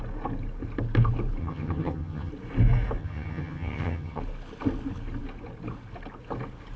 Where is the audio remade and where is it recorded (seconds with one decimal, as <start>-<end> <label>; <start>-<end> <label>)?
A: 0.0-1.4 recorded; 1.4-2.3 remade; 2.3-3.0 recorded; 3.0-4.2 remade; 4.2-6.8 recorded